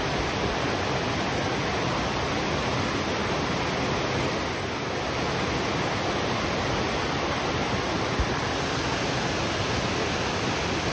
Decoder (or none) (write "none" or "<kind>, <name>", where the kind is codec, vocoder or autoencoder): none